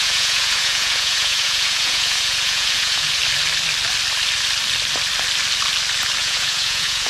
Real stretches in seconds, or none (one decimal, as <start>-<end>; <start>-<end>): 3.2-6.2